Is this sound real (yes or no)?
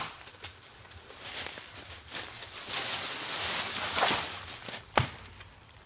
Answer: yes